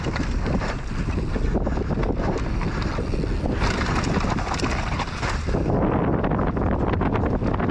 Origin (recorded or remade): recorded